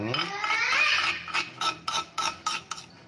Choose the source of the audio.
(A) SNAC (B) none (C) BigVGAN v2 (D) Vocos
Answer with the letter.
B